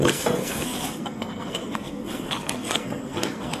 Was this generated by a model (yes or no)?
yes